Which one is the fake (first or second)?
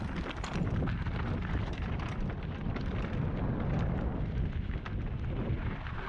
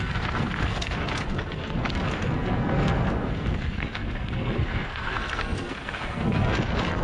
second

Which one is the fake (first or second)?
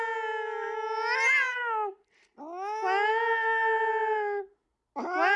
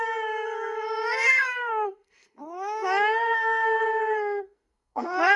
second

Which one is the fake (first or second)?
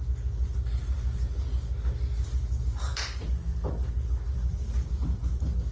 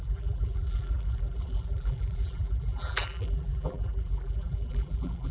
second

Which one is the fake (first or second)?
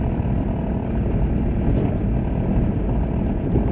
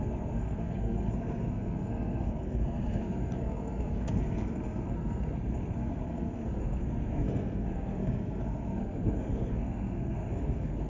second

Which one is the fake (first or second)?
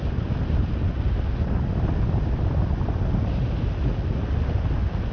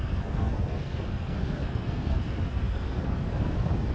second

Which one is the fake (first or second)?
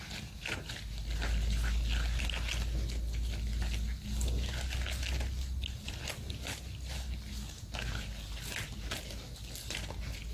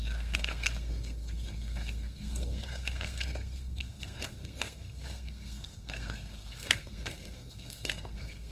second